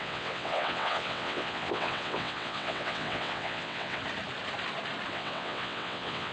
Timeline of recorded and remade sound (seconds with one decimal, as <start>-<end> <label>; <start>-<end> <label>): 0.0-4.0 remade; 4.0-5.1 recorded; 5.1-6.3 remade